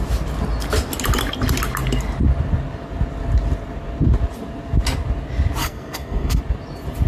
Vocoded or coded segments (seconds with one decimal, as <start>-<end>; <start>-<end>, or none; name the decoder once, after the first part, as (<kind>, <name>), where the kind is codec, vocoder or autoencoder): 5.6-6.4 (codec, SNAC)

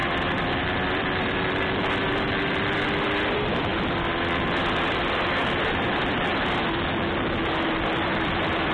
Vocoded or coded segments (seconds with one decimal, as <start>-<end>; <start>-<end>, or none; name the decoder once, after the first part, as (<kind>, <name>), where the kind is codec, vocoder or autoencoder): 0.0-6.3 (vocoder, BigVGAN v2); 7.6-8.7

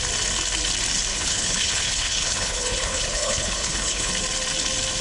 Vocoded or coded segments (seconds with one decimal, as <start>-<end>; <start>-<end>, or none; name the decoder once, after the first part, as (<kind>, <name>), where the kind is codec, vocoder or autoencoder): 1.1-4.1 (codec, HILCodec)